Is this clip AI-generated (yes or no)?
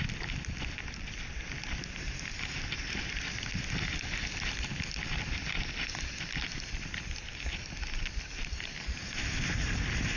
no